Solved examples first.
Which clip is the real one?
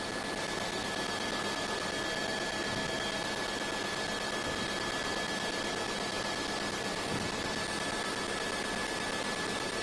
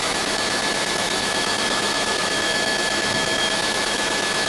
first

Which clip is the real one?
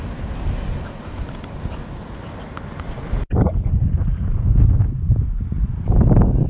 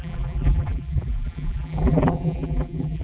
first